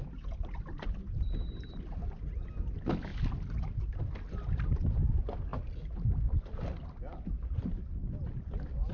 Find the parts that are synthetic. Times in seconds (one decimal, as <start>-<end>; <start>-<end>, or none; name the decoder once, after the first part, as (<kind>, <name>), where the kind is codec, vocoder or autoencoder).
none